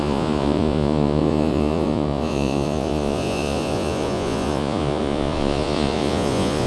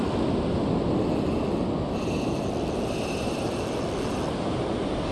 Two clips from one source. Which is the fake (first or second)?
first